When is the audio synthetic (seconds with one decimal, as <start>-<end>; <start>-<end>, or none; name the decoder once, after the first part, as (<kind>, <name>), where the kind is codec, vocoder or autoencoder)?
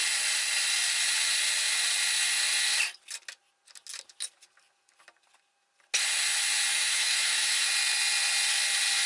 6.7-7.7 (autoencoder, DAC-VAE)